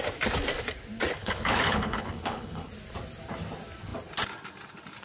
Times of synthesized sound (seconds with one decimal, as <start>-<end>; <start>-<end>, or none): 1.2-2.7